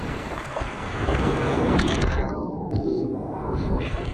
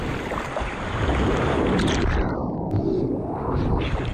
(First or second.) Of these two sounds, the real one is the second